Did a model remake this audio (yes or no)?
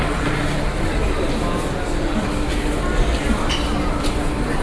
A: no